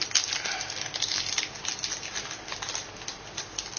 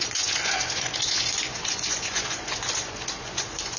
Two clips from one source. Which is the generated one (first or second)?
second